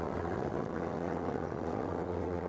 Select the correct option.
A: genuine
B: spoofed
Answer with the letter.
B